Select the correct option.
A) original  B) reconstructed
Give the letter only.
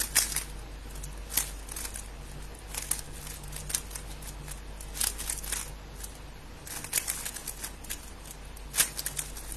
A